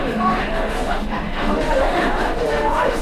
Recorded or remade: remade